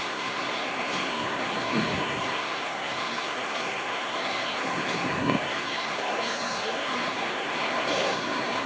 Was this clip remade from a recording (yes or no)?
yes